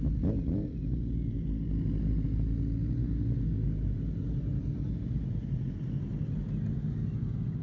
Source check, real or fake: real